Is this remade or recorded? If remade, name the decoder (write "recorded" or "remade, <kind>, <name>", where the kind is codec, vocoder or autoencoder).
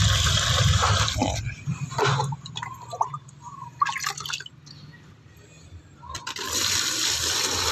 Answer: recorded